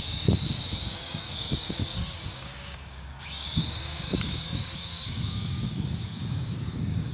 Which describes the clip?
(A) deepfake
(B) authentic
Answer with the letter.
A